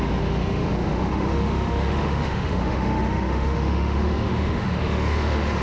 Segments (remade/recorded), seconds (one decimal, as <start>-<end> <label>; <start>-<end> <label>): 0.0-5.6 remade